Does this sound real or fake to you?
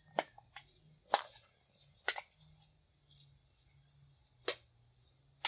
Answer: real